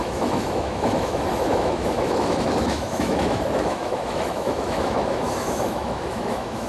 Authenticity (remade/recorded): remade